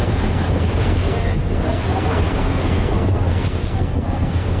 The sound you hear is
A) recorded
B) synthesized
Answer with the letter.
B